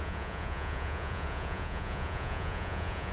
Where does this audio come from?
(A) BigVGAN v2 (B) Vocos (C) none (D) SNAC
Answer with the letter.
B